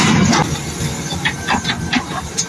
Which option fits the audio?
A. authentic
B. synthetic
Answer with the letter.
A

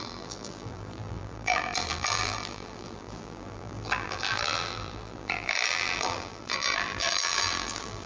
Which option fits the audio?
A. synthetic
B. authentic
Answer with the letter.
A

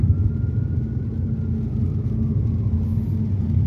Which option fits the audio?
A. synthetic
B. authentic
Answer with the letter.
B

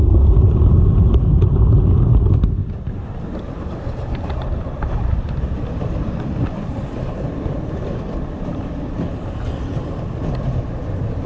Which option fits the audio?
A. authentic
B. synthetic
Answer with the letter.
B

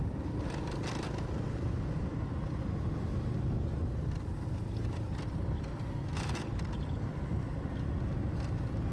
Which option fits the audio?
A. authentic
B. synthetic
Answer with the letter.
A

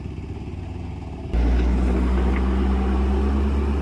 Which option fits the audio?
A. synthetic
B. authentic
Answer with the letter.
B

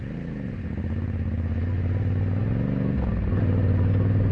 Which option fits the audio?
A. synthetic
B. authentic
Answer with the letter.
B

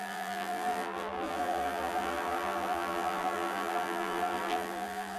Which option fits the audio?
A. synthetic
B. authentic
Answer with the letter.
A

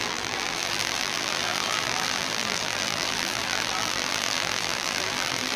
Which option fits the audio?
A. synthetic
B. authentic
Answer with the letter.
A